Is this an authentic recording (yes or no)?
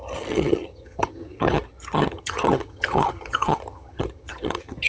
no